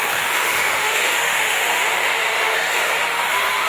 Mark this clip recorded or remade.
remade